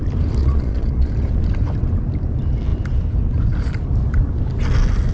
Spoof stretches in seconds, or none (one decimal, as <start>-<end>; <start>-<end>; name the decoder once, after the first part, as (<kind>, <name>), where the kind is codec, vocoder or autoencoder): 0.4-1.1 (vocoder, Vocos)